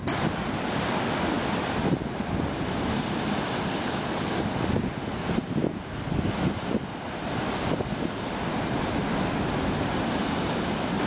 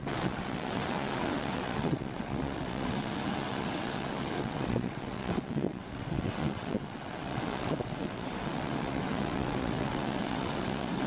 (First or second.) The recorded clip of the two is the first